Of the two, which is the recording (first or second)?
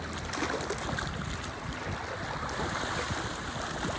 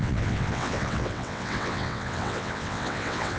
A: first